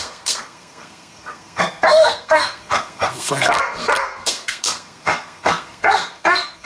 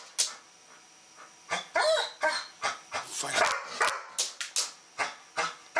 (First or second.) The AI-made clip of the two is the first